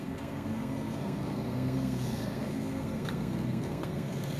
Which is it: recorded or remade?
remade